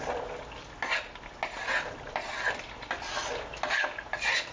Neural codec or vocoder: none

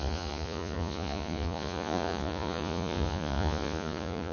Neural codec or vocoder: vocoder, Vocos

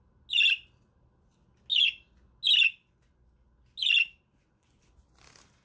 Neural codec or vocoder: none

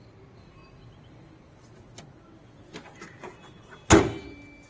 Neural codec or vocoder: none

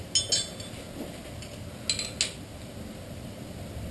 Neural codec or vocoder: none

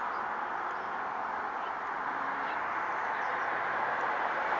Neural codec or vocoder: none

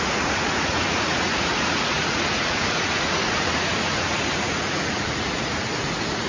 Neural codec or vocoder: vocoder, Vocos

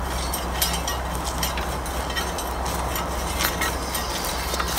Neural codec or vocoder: none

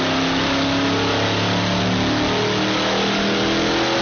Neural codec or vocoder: none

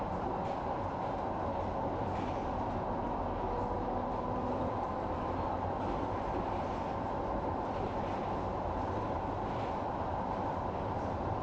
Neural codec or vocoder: none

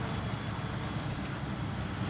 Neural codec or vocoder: none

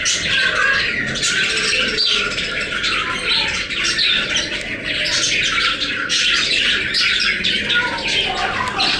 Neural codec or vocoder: none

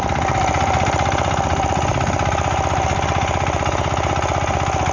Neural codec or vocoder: none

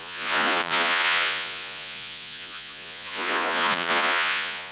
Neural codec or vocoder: vocoder, Vocos